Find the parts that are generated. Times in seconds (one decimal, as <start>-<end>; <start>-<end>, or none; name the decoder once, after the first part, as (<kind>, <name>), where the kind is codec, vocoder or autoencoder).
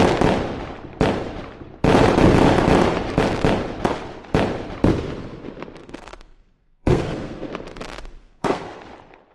5.8-7.5 (codec, SNAC); 8.2-8.8